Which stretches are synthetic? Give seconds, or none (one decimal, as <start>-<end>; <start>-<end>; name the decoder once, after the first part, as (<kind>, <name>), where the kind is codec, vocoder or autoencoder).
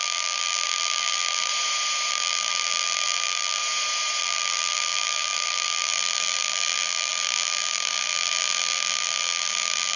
0.0-1.5 (vocoder, BigVGAN v2); 2.1-3.6; 4.2-10.0